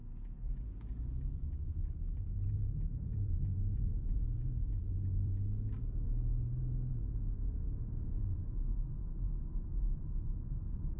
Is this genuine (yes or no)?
no